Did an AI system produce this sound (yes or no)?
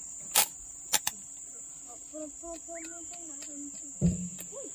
yes